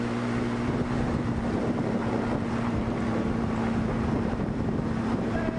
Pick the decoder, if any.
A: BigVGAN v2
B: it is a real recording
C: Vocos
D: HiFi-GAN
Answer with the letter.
A